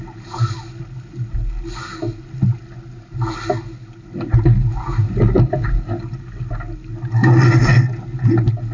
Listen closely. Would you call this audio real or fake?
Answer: real